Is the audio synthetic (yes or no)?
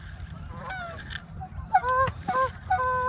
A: no